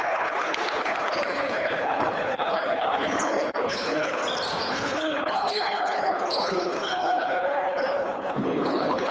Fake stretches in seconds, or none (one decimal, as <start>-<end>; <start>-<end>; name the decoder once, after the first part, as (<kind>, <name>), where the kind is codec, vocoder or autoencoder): 0.0-4.2 (codec, HILCodec); 4.7-9.1